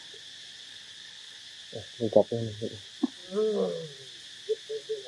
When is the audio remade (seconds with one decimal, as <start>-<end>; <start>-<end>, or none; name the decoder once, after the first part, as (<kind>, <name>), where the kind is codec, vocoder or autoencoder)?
0.7-1.4 (codec, HILCodec)